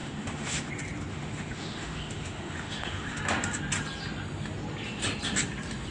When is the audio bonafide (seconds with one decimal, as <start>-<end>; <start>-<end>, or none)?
0.7-1.1; 3.2-5.9